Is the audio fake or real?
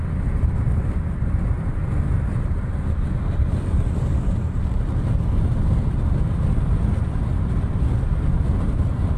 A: real